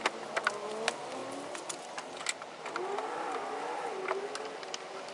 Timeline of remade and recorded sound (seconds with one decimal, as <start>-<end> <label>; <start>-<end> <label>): 0.0-5.1 recorded